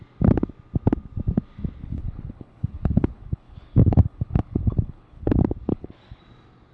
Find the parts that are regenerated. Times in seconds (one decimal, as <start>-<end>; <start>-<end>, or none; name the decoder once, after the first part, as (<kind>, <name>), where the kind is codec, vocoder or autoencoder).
1.8-5.3 (codec, HILCodec); 5.7-6.2

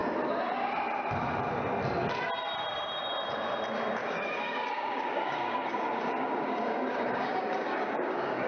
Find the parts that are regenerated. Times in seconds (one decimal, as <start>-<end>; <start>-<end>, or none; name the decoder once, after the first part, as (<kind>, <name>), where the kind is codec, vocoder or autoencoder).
4.0-8.5 (codec, DAC)

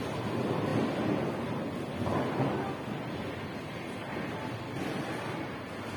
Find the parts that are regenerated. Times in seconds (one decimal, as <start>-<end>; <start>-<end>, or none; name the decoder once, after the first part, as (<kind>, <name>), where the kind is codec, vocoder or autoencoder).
none

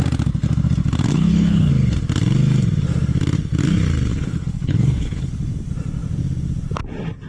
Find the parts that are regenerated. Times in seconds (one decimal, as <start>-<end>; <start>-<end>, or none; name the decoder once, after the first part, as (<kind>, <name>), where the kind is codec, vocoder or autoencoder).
1.1-1.7 (codec, HILCodec); 4.1-5.3

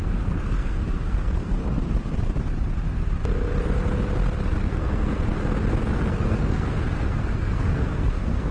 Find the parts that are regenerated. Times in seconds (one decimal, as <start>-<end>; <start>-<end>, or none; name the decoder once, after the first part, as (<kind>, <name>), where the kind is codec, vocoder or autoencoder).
0.0-1.6 (codec, SNAC); 4.6-5.4; 5.9-8.5

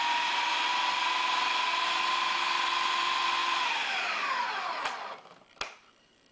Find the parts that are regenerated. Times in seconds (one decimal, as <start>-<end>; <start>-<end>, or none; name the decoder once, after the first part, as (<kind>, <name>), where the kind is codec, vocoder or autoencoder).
3.4-4.5 (vocoder, BigVGAN v2)

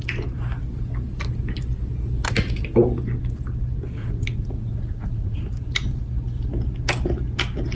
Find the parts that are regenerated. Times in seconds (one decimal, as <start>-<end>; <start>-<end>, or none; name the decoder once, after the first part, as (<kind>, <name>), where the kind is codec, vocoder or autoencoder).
4.0-5.4 (vocoder, Vocos)